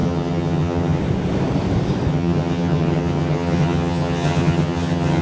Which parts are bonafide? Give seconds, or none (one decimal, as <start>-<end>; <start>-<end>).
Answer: 1.0-2.1